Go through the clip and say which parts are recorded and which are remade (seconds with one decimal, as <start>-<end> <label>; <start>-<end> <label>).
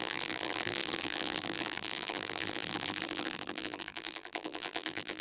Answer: 0.0-5.2 remade